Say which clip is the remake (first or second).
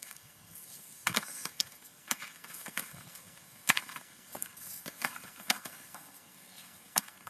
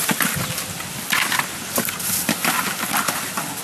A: first